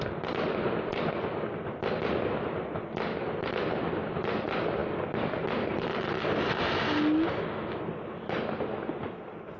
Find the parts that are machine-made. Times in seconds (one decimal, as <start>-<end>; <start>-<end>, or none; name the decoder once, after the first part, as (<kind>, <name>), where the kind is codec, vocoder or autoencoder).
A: none